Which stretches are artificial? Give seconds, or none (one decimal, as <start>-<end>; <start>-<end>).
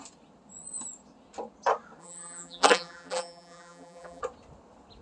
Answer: 2.0-4.2